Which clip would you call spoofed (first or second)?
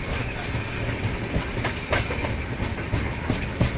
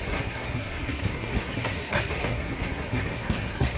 second